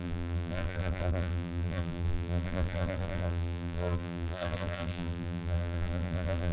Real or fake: fake